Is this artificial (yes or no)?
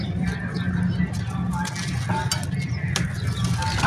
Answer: no